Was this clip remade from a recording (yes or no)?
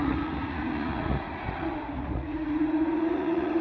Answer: yes